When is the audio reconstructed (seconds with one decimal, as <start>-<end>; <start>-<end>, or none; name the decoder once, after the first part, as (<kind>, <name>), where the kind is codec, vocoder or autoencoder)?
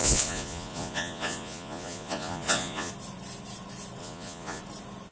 0.0-2.9 (vocoder, Vocos); 4.0-4.6